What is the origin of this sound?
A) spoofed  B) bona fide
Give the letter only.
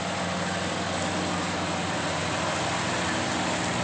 B